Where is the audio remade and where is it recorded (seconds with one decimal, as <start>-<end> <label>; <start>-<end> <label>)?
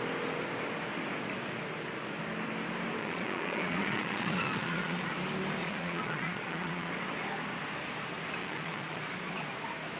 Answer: 0.0-3.0 recorded; 3.0-5.0 remade; 5.0-5.6 recorded; 5.6-6.9 remade; 6.9-8.4 recorded; 8.4-9.0 remade; 9.0-10.0 recorded